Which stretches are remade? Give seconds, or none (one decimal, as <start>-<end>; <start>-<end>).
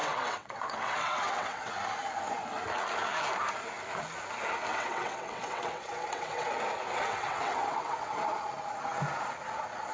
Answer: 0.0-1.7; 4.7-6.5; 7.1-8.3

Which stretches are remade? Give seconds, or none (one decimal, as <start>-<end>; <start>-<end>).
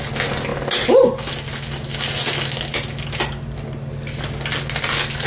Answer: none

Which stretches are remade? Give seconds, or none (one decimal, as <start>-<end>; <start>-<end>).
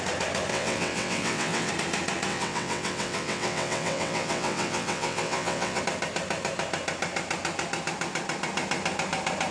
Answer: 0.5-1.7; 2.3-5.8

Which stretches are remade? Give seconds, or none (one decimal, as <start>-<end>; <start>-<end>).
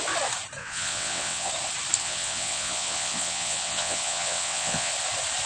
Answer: 0.6-1.5; 2.0-4.9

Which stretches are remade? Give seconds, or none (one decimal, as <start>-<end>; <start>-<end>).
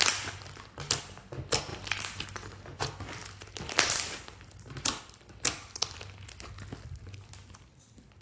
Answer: none